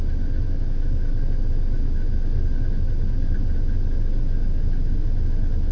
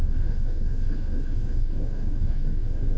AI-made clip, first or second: second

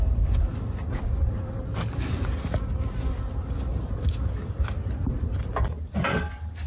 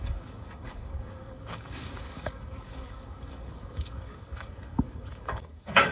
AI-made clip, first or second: second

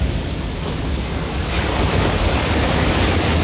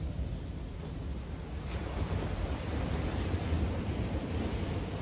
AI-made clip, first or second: first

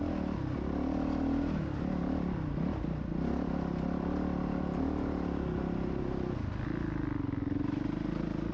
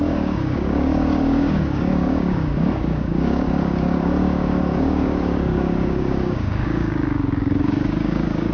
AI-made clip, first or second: second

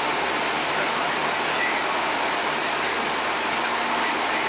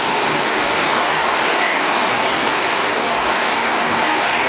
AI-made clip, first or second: second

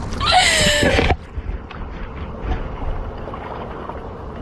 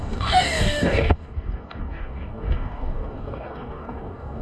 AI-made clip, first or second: second